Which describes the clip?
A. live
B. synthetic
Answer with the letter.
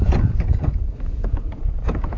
B